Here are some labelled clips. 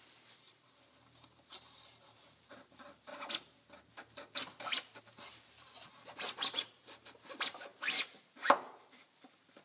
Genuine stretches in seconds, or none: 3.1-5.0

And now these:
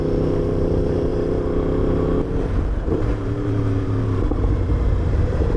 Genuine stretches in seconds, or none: none